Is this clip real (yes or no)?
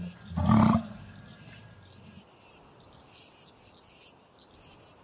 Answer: yes